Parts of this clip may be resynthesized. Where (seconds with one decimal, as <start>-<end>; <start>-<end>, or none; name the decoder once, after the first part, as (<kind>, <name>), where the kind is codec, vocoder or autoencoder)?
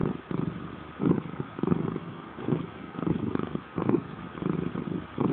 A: 1.0-4.2 (codec, SNAC)